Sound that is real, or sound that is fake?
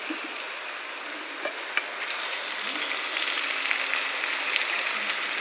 real